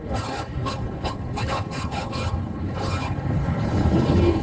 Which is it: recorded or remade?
remade